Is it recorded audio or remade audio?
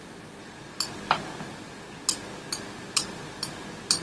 recorded